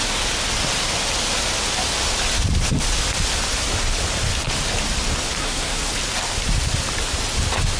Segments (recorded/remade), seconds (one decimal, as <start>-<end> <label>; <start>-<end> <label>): 0.0-5.4 recorded; 5.4-5.9 remade; 5.9-7.8 recorded